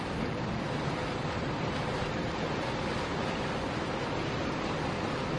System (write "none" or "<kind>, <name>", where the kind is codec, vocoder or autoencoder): none